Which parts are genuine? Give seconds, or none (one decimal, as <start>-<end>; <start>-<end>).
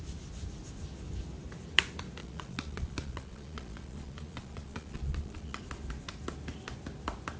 0.0-2.2; 5.6-7.4